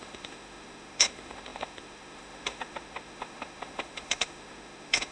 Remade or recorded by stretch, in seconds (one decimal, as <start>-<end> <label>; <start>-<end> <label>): 0.0-5.1 remade

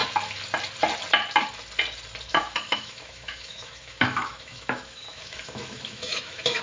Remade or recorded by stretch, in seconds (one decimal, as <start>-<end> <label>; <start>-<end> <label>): 0.0-2.3 recorded; 2.3-6.6 remade

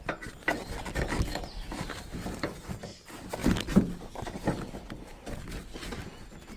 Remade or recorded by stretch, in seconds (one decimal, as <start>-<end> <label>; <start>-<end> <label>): 0.0-6.6 recorded

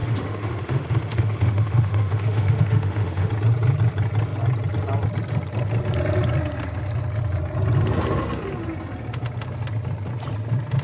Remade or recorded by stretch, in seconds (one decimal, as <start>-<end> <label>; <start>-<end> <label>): 0.0-3.3 remade; 3.3-10.8 recorded